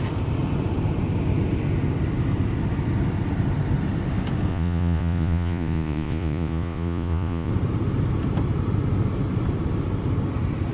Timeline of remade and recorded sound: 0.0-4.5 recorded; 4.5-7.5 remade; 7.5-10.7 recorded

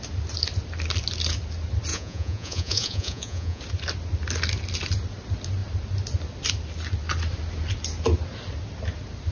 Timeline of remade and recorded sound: 0.0-1.9 recorded; 1.9-3.6 remade; 3.6-9.3 recorded

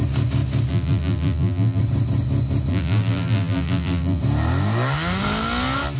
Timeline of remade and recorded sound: 0.0-0.7 recorded; 0.7-1.8 remade; 1.8-2.7 recorded; 2.7-4.2 remade; 4.2-6.0 recorded

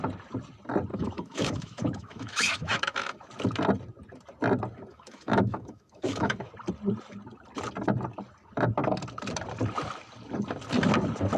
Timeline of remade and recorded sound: 0.0-0.9 recorded; 0.9-3.3 remade; 3.3-4.9 recorded; 4.9-6.5 remade; 6.5-11.4 recorded